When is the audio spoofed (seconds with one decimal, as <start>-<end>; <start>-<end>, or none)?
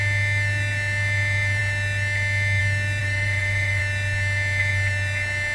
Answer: 3.0-3.8